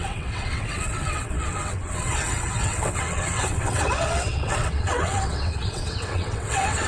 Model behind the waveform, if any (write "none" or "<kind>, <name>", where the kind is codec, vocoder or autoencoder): vocoder, WaveNeXt